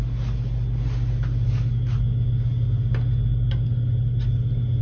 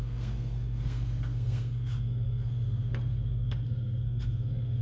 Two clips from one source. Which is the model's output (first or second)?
second